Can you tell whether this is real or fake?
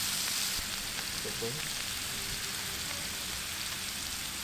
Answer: real